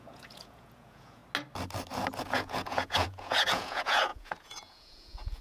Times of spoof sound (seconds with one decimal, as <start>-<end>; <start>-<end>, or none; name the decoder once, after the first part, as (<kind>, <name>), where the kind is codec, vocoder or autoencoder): 0.0-1.2 (vocoder, Vocos); 2.2-5.4